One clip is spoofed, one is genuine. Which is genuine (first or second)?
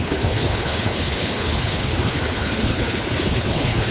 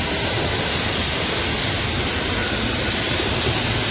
second